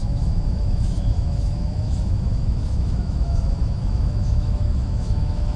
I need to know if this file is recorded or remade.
remade